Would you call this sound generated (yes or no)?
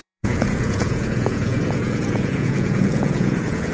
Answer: yes